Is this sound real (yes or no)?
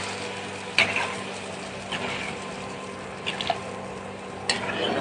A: yes